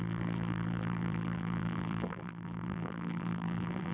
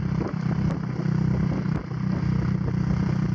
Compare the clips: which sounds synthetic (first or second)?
first